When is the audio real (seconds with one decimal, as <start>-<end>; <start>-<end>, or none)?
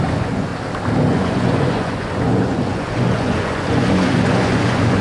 0.5-1.1